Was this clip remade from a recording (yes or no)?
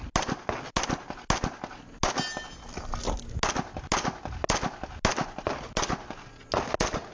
no